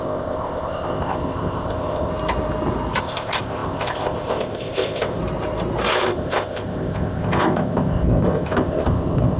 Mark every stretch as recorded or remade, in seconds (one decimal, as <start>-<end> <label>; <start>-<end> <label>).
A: 0.0-2.1 remade; 2.1-3.0 recorded; 3.0-5.2 remade; 5.2-5.9 recorded; 5.9-9.4 remade